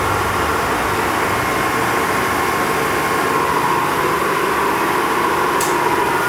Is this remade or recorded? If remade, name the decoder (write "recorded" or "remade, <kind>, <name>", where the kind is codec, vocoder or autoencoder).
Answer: recorded